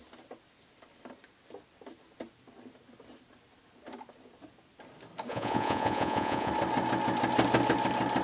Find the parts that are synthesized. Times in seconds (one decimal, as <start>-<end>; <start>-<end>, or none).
5.3-6.5